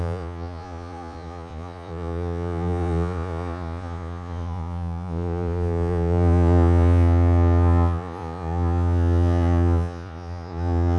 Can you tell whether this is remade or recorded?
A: remade